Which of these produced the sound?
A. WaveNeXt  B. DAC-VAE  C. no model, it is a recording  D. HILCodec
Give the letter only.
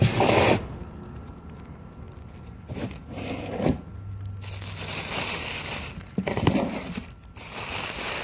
C